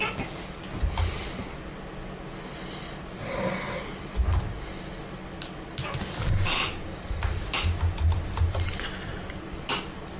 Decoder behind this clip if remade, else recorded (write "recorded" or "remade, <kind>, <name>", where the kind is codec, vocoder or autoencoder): recorded